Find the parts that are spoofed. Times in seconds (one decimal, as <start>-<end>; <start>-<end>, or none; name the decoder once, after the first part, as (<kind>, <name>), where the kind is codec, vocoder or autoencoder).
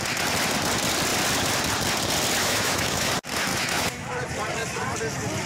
2.4-3.1 (autoencoder, DAC-VAE); 3.5-4.1